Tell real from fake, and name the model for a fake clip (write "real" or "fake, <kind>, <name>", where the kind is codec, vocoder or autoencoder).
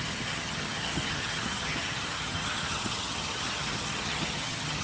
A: fake, vocoder, HiFi-GAN